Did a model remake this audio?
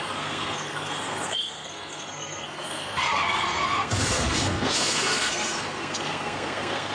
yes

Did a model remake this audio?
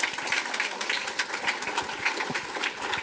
no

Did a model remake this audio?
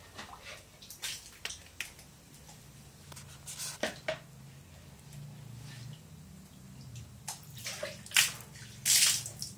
no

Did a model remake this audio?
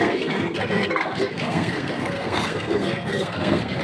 yes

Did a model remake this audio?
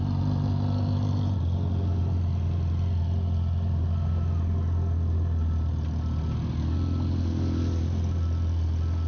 no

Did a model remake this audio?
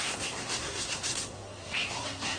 yes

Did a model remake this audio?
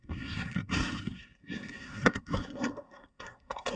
yes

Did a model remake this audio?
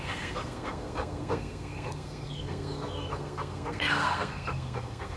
yes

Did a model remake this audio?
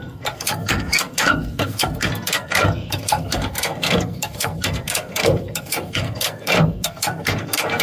yes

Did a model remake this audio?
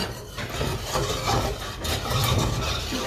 no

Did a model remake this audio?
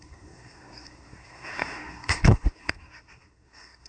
yes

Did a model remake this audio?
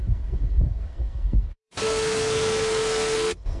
yes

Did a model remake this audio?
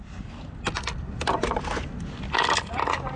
no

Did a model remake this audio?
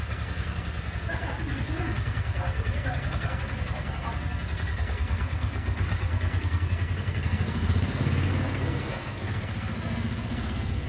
yes